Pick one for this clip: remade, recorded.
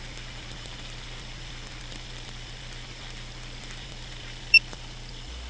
remade